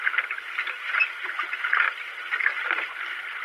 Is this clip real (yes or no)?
yes